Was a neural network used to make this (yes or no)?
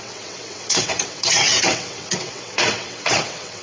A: yes